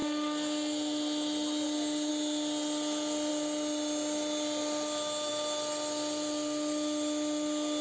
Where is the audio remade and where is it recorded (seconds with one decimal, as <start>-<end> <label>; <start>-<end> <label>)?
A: 0.0-7.8 recorded